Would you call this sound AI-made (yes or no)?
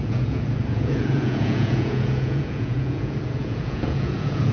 yes